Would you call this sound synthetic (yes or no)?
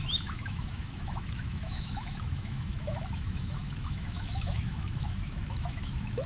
yes